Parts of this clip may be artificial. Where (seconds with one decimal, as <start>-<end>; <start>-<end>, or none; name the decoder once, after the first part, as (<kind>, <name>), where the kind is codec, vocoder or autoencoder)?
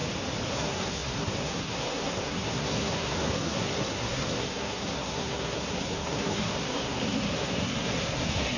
0.5-8.6 (codec, SNAC)